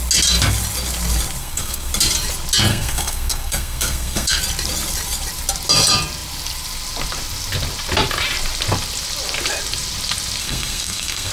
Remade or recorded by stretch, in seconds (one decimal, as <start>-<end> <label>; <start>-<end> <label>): 0.0-1.4 recorded; 1.4-1.9 remade; 1.9-2.7 recorded; 2.7-4.4 remade; 4.4-10.4 recorded; 10.4-11.3 remade